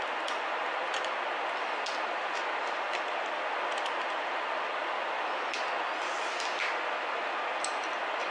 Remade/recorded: recorded